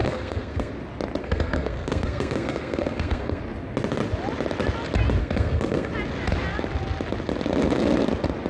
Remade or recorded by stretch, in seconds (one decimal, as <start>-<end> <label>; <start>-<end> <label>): 0.0-0.7 remade; 0.7-1.2 recorded; 1.2-3.4 remade; 3.4-5.2 recorded; 5.2-5.9 remade; 5.9-8.5 recorded